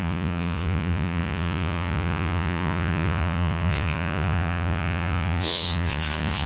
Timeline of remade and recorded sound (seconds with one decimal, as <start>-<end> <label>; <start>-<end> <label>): 0.0-6.5 remade